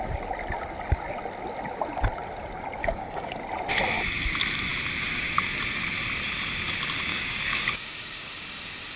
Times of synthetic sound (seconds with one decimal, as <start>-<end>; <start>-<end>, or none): 2.8-3.4; 7.1-8.5